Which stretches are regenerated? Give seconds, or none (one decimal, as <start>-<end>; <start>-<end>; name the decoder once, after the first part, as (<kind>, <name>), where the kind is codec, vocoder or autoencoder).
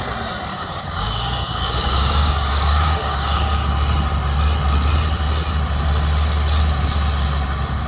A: 0.5-3.6 (codec, DAC)